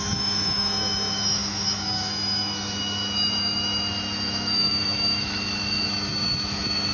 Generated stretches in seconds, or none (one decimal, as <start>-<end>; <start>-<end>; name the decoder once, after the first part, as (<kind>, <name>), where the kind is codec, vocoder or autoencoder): 0.0-6.9 (autoencoder, DAC-VAE)